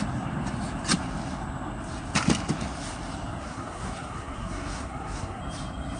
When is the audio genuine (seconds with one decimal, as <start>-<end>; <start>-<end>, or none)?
0.0-3.4; 5.4-6.0